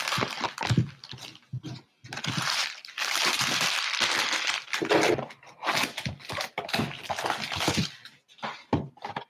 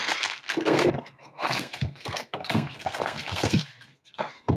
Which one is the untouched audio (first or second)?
first